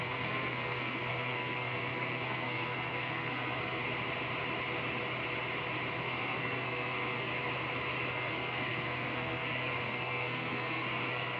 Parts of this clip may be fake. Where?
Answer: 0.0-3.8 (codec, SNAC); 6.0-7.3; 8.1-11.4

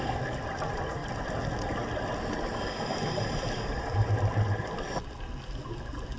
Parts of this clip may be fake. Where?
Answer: none

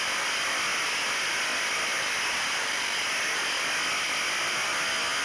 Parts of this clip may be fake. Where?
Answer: none

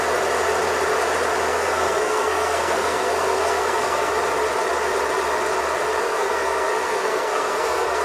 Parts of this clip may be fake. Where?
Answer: 1.5-4.1 (codec, SNAC); 6.0-8.0

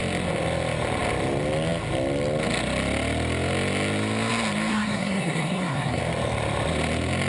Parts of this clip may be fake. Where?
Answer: 4.7-6.0 (codec, SNAC)

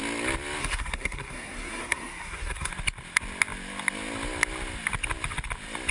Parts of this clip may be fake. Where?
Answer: 0.6-2.7 (codec, SNAC)